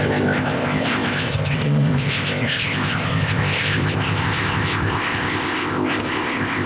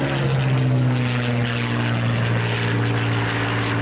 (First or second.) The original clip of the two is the second